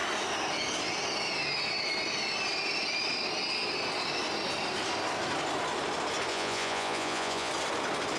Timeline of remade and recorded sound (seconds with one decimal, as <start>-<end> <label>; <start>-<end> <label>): 0.0-6.3 recorded; 6.3-7.5 remade; 7.5-8.2 recorded